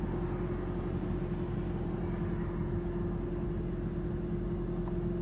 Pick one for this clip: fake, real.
real